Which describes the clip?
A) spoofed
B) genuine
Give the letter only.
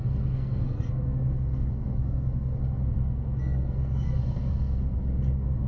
A